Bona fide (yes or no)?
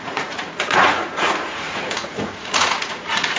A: no